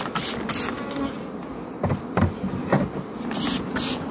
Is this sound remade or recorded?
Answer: recorded